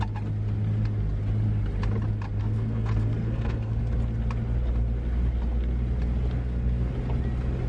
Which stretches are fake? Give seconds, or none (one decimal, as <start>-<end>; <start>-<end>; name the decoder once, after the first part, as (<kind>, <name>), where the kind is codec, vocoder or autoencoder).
2.4-3.8 (codec, SNAC); 6.4-6.9